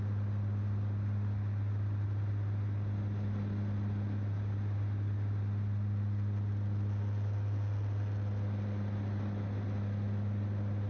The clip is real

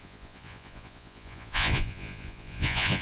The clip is fake